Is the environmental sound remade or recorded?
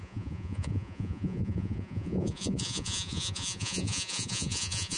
remade